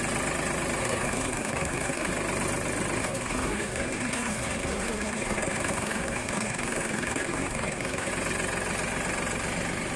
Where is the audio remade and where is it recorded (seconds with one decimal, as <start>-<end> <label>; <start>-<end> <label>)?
0.0-0.8 recorded; 0.8-2.1 remade; 2.1-3.0 recorded; 3.0-8.1 remade; 8.1-10.0 recorded